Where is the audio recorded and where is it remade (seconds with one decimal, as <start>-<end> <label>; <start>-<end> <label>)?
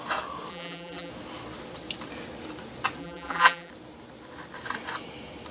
0.0-0.5 recorded; 0.5-1.1 remade; 1.1-3.0 recorded; 3.0-3.7 remade; 3.7-5.5 recorded